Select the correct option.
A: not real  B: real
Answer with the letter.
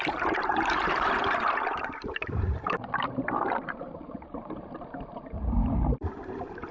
A